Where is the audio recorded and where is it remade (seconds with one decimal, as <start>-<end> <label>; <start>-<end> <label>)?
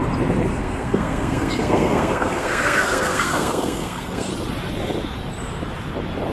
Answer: 0.0-0.5 recorded; 0.5-4.3 remade; 4.3-6.3 recorded